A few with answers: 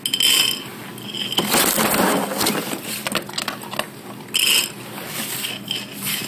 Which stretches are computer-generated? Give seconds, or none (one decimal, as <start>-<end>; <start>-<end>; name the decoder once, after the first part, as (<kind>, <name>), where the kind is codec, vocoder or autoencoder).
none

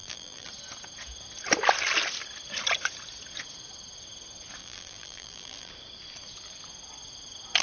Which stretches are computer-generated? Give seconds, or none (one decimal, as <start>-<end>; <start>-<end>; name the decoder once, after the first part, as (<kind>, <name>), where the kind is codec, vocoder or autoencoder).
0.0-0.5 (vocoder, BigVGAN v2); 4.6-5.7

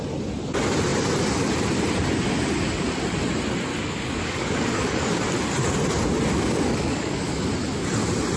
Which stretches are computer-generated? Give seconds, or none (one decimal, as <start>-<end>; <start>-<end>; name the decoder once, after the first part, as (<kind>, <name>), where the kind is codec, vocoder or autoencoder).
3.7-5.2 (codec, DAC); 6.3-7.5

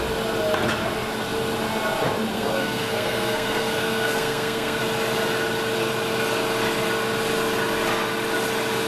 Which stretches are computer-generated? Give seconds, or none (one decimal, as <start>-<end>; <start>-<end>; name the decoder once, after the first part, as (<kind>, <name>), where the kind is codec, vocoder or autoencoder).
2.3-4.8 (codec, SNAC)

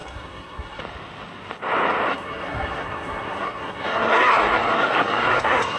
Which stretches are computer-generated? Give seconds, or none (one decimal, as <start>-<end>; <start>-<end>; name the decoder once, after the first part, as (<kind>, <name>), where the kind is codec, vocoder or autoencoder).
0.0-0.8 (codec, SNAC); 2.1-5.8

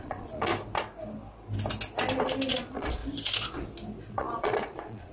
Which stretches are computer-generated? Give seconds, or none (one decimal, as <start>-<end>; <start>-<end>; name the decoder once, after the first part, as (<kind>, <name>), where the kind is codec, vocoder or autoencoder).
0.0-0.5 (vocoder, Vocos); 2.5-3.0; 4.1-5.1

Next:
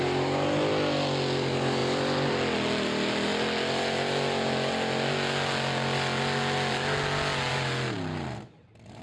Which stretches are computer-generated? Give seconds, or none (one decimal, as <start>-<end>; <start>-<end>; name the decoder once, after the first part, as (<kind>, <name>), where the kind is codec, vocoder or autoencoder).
none

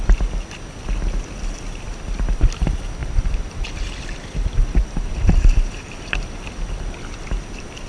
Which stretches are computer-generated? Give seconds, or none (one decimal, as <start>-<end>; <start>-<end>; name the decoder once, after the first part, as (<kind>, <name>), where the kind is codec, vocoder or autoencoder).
3.0-5.8 (vocoder, BigVGAN v2)